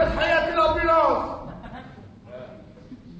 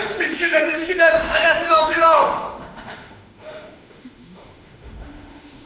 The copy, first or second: second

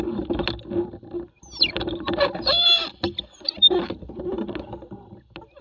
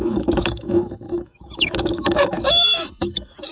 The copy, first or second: second